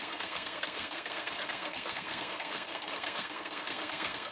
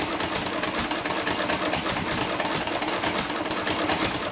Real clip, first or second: second